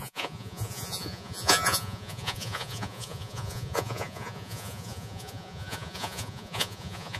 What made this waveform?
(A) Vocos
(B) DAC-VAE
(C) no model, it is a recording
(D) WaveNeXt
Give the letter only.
A